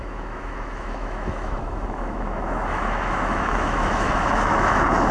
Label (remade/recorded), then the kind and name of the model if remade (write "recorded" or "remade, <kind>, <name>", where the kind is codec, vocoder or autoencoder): remade, autoencoder, DAC-VAE